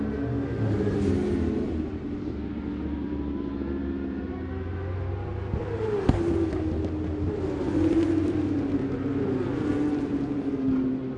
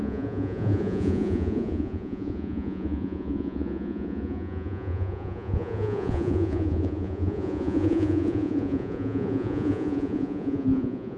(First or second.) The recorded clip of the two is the first